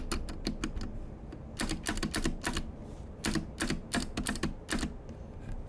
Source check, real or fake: real